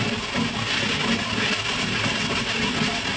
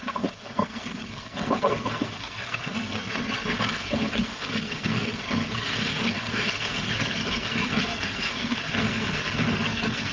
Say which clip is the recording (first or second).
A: first